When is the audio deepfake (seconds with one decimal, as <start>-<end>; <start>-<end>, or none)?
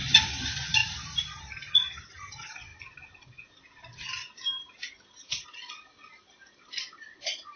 none